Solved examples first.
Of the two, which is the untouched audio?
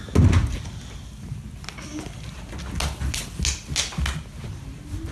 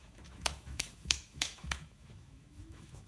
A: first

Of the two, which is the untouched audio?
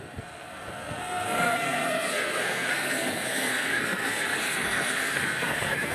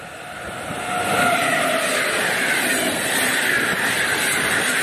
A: second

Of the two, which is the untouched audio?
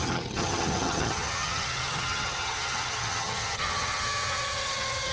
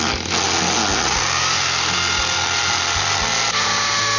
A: second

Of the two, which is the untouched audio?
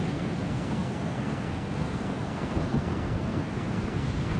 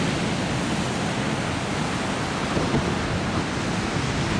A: second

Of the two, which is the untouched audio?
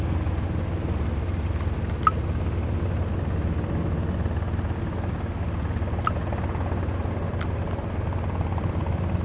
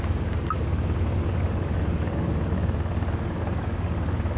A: first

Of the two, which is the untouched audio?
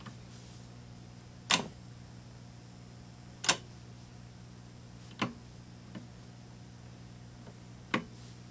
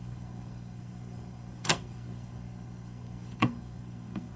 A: first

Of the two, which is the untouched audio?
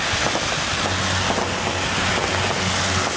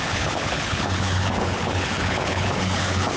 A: first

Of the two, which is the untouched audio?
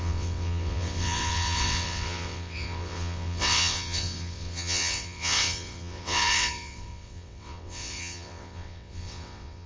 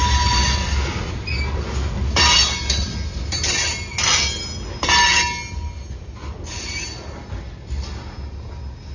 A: second